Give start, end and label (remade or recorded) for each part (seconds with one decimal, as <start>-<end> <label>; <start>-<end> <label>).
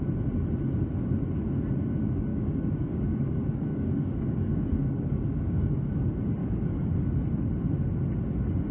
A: 0.0-2.3 recorded; 2.3-5.9 remade; 5.9-6.4 recorded; 6.4-7.1 remade; 7.1-8.7 recorded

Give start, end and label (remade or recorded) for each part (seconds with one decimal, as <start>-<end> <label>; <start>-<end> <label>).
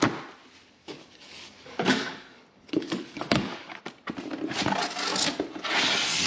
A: 0.0-0.8 recorded; 0.8-3.8 remade; 3.8-6.3 recorded